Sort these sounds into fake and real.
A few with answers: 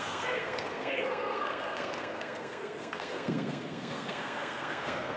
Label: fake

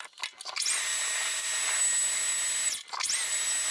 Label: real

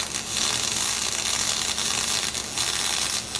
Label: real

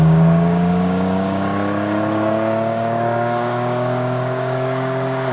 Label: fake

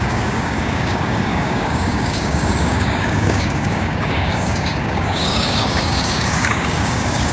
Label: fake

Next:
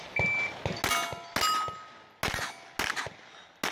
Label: real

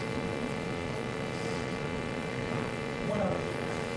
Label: fake